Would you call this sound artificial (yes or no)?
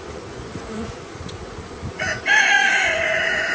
yes